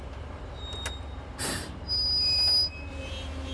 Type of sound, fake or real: real